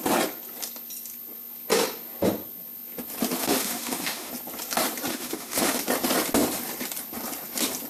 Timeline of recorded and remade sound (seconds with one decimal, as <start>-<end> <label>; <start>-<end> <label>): 0.0-3.4 recorded; 3.4-4.3 remade; 4.3-5.1 recorded; 5.1-5.8 remade; 5.8-7.9 recorded